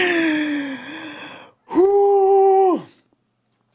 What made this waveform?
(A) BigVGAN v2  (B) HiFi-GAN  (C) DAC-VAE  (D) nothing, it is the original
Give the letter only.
D